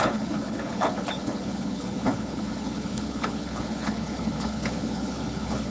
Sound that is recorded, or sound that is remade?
remade